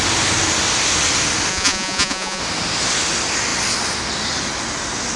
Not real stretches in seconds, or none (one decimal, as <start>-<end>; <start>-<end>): 1.5-2.4